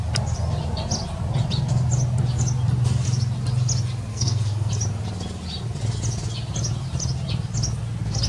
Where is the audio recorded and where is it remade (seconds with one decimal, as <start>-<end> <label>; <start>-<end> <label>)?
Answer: 0.0-4.1 recorded; 4.1-4.7 remade; 4.7-8.3 recorded